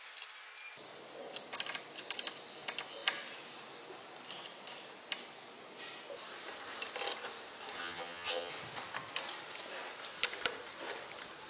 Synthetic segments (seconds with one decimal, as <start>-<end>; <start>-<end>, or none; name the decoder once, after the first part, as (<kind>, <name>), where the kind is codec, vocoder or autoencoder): 7.8-8.5 (vocoder, HiFi-GAN)